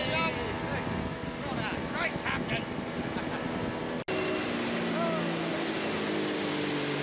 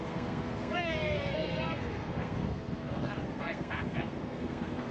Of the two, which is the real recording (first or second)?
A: first